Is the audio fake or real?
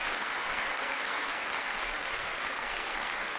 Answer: fake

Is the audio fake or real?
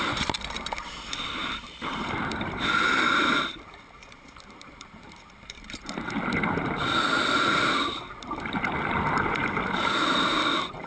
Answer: fake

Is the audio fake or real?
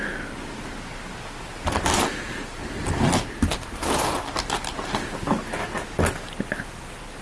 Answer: real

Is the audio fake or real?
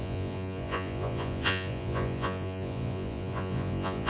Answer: fake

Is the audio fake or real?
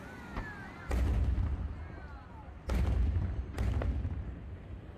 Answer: real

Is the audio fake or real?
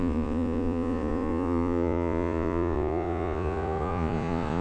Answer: fake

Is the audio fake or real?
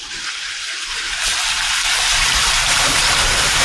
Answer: fake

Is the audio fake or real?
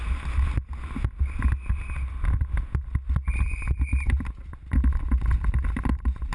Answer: real